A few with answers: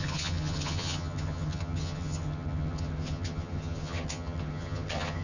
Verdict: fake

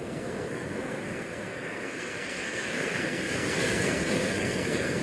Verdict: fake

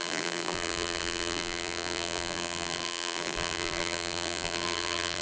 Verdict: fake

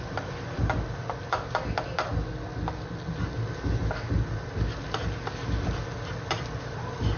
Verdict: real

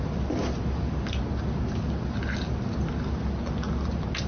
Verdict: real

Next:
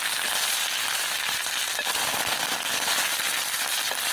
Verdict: real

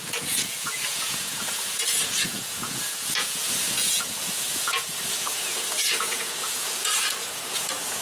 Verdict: fake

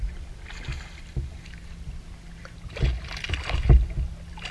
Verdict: real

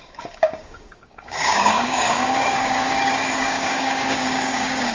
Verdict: fake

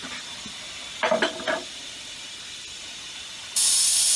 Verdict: real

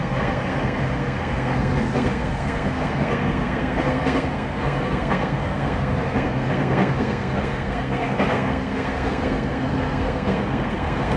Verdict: fake